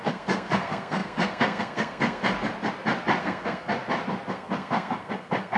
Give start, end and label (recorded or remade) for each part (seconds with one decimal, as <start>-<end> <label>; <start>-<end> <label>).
0.0-2.2 remade; 2.2-3.2 recorded; 3.2-3.7 remade; 3.7-4.3 recorded; 4.3-5.6 remade

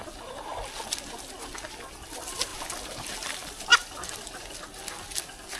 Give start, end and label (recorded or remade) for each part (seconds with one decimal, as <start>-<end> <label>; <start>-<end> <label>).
0.0-5.6 recorded

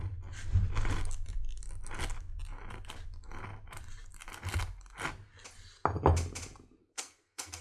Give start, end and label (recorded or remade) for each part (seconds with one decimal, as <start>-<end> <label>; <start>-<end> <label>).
0.0-6.8 recorded; 6.8-7.6 remade

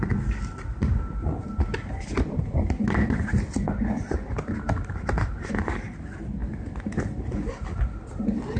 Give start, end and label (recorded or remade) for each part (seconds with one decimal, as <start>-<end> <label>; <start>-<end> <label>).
0.0-8.6 recorded

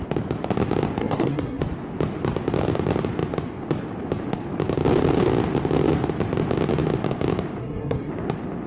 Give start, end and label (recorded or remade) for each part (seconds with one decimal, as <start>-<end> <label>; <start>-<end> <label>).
0.0-1.0 recorded; 1.0-1.6 remade; 1.6-7.6 recorded; 7.6-8.1 remade; 8.1-8.7 recorded